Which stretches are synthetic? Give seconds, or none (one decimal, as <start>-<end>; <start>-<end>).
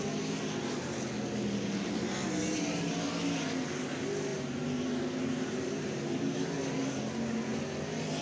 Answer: 4.3-7.0